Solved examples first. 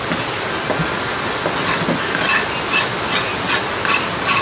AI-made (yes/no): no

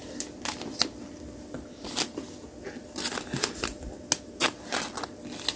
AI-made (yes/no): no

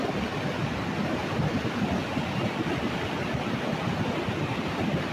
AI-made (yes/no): no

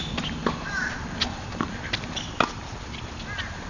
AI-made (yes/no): no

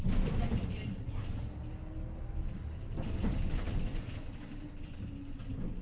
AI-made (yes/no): no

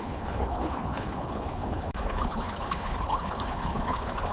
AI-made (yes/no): yes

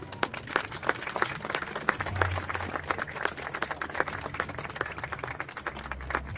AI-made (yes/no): no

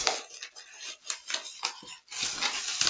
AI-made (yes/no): no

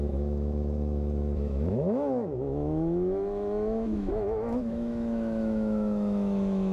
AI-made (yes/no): yes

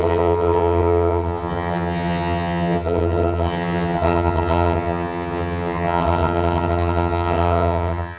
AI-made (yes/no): yes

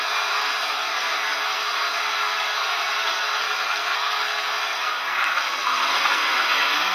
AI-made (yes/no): yes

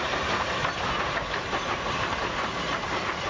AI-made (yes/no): no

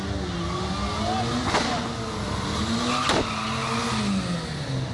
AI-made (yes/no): no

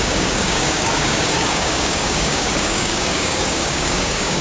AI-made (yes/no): yes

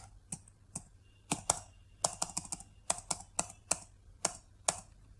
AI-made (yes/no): no